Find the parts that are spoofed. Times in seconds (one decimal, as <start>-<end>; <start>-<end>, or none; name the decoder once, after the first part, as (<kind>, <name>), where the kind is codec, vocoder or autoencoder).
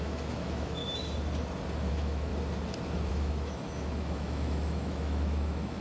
0.0-0.8 (autoencoder, DAC-VAE); 1.9-2.3; 3.1-5.8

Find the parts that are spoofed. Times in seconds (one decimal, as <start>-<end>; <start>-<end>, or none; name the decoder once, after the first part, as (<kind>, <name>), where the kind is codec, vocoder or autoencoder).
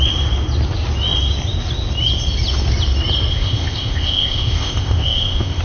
3.3-5.6 (codec, ZipCodec)